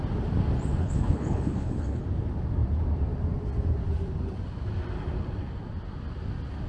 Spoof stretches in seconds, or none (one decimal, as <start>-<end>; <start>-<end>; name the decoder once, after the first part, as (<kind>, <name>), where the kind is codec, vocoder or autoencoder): 0.8-2.0 (codec, HILCodec)